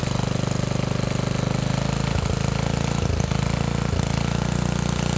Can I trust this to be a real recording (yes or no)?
yes